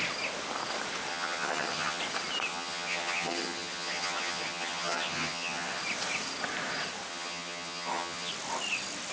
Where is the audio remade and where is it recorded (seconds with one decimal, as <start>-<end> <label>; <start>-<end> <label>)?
0.0-1.1 recorded; 1.1-2.0 remade; 2.0-2.5 recorded; 2.5-5.8 remade; 5.8-7.1 recorded; 7.1-8.3 remade; 8.3-9.1 recorded